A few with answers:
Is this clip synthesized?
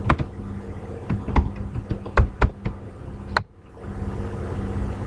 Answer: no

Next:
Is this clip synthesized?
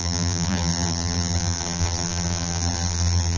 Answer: yes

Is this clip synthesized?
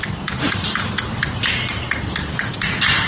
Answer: no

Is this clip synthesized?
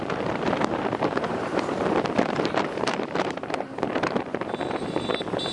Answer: yes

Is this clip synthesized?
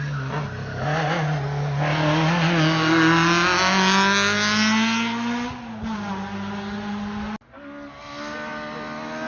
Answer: no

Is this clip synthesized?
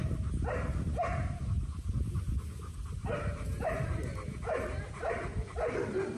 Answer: yes